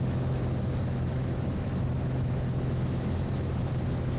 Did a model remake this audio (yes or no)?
yes